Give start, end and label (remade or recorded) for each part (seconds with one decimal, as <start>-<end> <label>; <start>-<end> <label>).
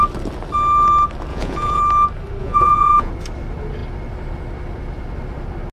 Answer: 0.0-1.3 recorded; 1.3-1.8 remade; 1.8-2.4 recorded; 2.4-3.1 remade; 3.1-5.7 recorded